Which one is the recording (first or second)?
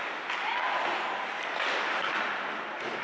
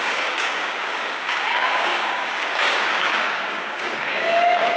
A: first